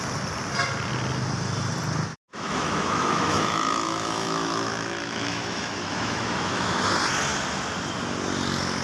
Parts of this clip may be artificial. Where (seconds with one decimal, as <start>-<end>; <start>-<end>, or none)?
2.1-6.8